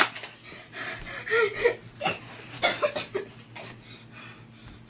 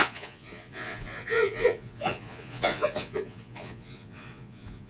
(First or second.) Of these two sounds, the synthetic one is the second